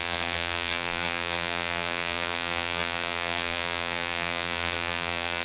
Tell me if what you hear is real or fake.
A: fake